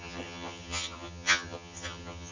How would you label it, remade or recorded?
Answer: remade